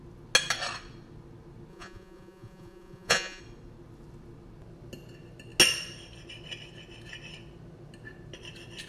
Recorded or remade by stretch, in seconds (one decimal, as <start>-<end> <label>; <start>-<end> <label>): 0.0-1.7 recorded; 1.7-3.4 remade; 3.4-8.9 recorded